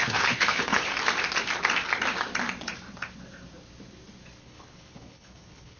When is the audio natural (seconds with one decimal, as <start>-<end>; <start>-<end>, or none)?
0.9-4.4